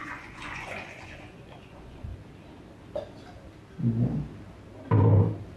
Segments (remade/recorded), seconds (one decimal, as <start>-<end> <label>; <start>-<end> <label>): 0.0-2.1 remade; 2.1-5.6 recorded